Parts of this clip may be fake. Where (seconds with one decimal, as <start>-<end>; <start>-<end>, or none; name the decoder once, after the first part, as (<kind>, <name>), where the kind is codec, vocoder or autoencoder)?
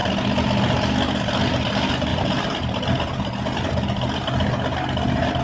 none